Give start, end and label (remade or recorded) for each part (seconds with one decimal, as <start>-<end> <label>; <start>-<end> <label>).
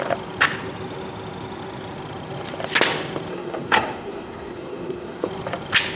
0.0-3.3 recorded; 3.3-5.3 remade; 5.3-6.0 recorded